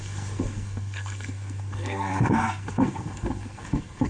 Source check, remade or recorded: remade